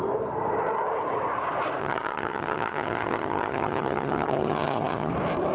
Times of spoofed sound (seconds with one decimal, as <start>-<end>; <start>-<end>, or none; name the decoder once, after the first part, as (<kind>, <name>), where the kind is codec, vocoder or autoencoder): 1.8-5.1 (vocoder, HiFi-GAN)